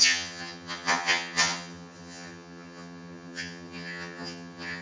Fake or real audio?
fake